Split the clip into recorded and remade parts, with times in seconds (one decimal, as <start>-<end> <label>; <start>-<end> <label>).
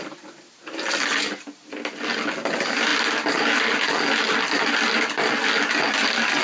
0.0-6.4 recorded